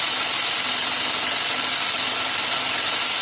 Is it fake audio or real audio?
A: real